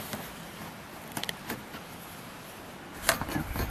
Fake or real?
real